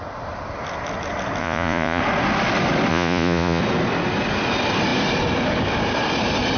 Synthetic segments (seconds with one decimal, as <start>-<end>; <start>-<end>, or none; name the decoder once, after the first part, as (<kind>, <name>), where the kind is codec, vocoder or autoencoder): 1.4-2.0 (vocoder, Vocos); 2.9-3.6

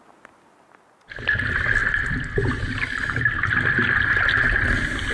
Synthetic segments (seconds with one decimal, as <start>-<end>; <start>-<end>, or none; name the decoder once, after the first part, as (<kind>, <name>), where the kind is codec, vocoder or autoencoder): none

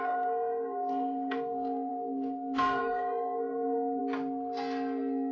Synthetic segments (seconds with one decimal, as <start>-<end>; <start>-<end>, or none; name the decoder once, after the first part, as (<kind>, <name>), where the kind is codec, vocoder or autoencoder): 0.0-4.0 (codec, SNAC)

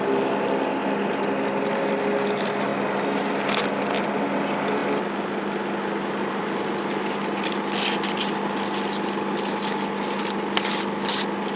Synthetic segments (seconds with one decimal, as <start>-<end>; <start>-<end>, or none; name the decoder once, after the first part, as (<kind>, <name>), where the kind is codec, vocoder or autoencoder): none